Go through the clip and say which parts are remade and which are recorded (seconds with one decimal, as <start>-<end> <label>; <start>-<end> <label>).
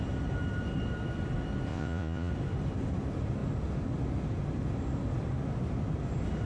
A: 0.0-1.7 recorded; 1.7-2.3 remade; 2.3-6.5 recorded